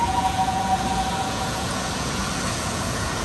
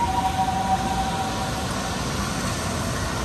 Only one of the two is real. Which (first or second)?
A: second